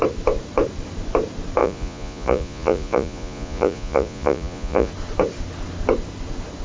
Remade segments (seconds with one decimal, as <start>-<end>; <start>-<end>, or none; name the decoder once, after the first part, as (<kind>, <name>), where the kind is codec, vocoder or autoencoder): 1.6-4.9 (vocoder, Vocos)